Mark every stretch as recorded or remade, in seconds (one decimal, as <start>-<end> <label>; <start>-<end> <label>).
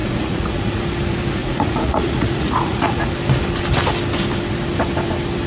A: 0.0-0.8 remade; 0.8-1.4 recorded; 1.4-3.1 remade; 3.1-5.5 recorded